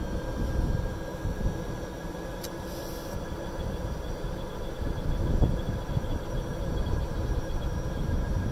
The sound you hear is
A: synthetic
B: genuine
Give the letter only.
B